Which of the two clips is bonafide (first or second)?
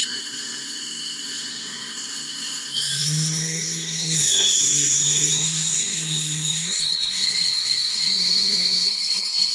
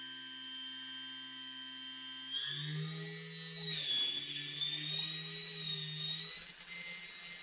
second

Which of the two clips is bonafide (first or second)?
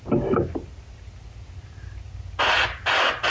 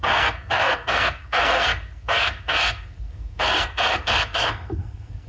first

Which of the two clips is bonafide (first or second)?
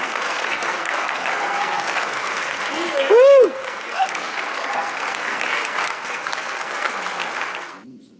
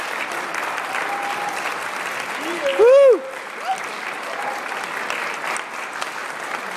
second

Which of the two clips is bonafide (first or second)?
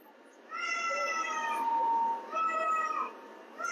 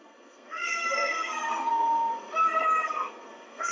first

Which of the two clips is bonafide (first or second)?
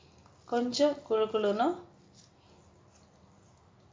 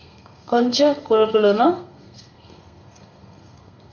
first